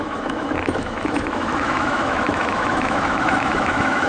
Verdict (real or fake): fake